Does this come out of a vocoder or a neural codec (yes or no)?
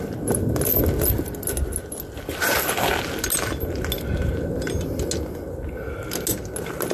no